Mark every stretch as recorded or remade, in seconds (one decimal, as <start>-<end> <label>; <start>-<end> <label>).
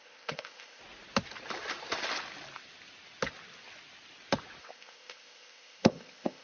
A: 0.0-0.8 remade; 0.8-4.6 recorded; 4.6-6.4 remade